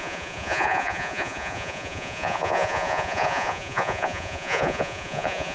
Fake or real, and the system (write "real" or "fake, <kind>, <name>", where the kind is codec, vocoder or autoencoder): fake, vocoder, Vocos